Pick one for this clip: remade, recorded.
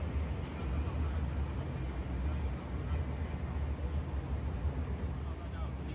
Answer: recorded